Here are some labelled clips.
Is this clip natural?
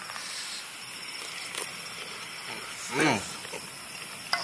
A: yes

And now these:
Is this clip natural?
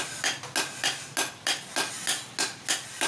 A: yes